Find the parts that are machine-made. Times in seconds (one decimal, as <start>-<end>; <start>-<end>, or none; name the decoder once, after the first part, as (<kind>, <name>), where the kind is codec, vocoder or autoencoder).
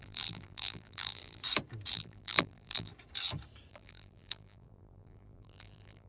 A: 0.0-1.4 (vocoder, BigVGAN v2); 1.9-2.9; 3.7-6.1